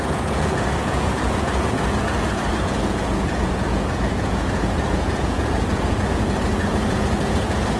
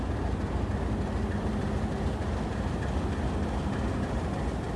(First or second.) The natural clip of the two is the second